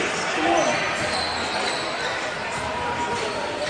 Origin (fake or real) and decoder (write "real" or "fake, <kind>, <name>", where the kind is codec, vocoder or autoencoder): real